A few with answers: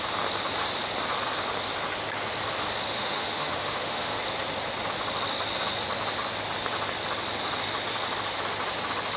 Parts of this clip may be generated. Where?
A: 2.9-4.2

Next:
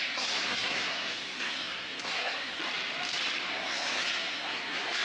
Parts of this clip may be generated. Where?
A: 0.0-2.6; 3.5-5.0

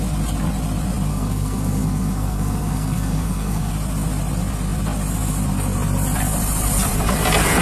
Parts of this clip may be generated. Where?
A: 1.1-3.7

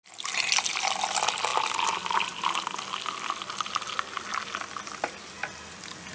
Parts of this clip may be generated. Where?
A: none

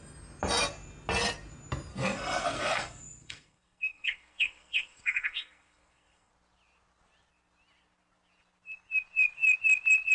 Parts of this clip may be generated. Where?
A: 1.9-6.3

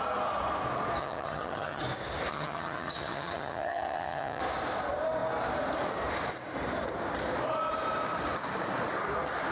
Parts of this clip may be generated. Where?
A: 1.0-1.8; 2.3-4.4

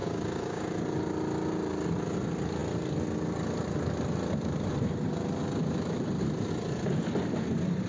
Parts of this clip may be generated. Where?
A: 0.0-0.6